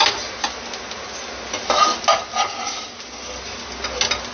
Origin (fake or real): real